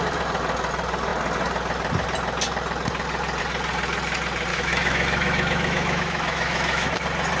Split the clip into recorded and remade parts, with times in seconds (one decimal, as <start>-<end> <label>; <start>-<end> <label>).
0.0-4.5 recorded; 4.5-6.9 remade; 6.9-7.4 recorded